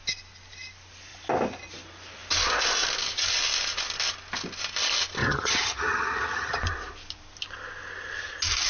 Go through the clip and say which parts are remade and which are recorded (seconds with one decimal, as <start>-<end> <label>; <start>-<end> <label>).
0.0-5.2 recorded; 5.2-6.6 remade; 6.6-8.7 recorded